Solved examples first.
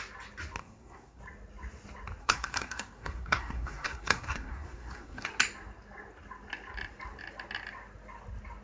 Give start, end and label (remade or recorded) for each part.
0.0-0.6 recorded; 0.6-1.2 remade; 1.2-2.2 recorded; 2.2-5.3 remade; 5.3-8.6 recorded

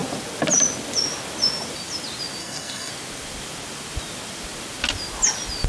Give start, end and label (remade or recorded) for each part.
0.0-2.4 recorded; 2.4-2.9 remade; 2.9-5.7 recorded

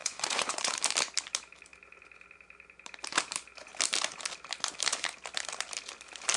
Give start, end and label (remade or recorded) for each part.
0.0-0.7 remade; 0.7-6.4 recorded

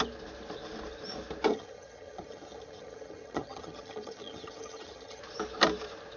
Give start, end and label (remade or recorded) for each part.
0.0-1.5 recorded; 1.5-5.2 remade; 5.2-6.2 recorded

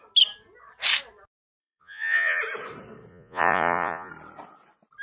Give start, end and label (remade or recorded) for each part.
0.0-1.6 recorded; 1.6-2.4 remade; 2.4-3.1 recorded; 3.1-4.1 remade; 4.1-5.0 recorded

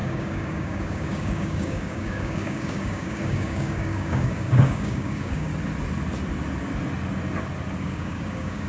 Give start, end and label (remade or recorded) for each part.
0.0-5.5 remade; 5.5-7.8 recorded; 7.8-8.7 remade

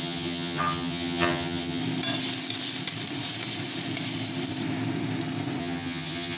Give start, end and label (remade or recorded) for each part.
0.0-1.8 remade; 1.8-5.6 recorded; 5.6-6.4 remade

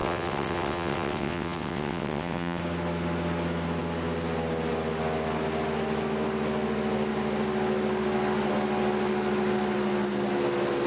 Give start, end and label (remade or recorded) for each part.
0.0-2.6 remade; 2.6-10.9 recorded